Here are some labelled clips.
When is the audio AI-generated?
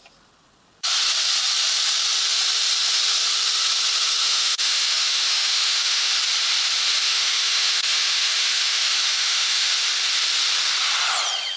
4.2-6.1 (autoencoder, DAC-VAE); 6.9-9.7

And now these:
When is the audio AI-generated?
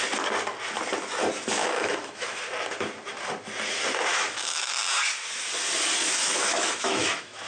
1.6-2.4 (autoencoder, DAC-VAE); 4.1-4.7; 6.0-7.5